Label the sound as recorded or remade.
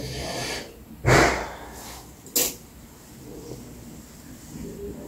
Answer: recorded